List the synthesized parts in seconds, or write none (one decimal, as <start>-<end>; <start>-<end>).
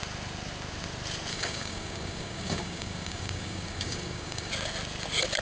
1.3-4.5